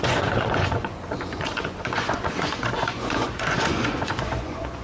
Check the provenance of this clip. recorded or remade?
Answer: remade